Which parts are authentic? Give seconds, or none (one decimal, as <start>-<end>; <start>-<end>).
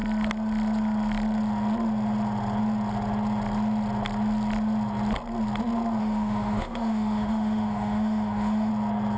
0.0-6.0; 8.7-9.2